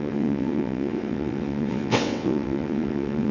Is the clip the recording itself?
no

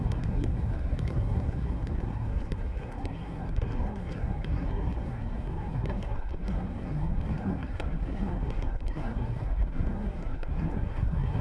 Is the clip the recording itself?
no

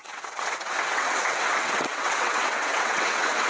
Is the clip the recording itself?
no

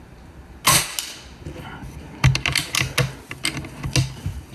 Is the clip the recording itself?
yes